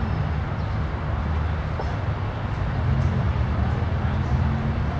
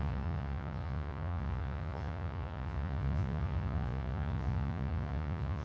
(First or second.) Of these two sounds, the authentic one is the first